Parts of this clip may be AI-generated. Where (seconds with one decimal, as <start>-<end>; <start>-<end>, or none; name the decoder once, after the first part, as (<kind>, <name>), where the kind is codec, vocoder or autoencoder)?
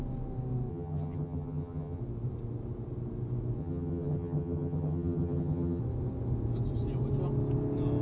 0.7-2.0 (vocoder, HiFi-GAN); 3.6-5.8